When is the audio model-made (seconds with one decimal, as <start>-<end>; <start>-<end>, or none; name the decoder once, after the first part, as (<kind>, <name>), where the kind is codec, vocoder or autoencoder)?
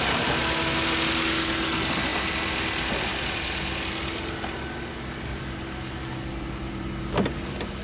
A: none